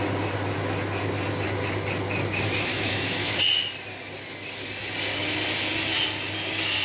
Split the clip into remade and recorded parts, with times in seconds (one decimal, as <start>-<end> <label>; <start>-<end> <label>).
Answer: 0.0-2.7 recorded; 2.7-3.4 remade; 3.4-6.8 recorded